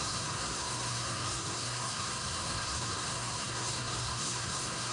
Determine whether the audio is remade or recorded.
remade